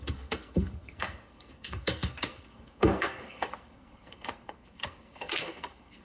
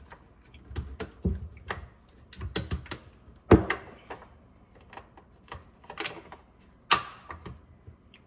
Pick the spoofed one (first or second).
first